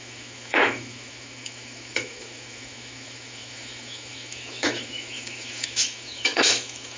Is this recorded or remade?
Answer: remade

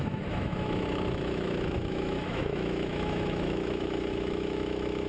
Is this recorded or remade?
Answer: remade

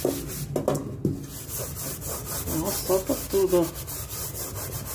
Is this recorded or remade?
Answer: recorded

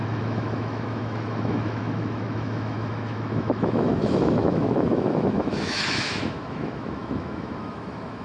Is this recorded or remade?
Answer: remade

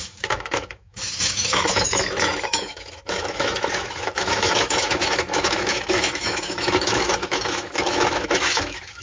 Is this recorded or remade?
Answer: remade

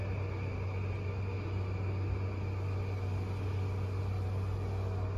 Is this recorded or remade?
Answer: recorded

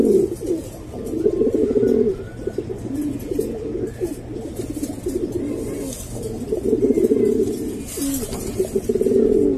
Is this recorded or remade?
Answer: recorded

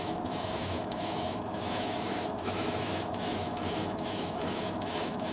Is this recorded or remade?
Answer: remade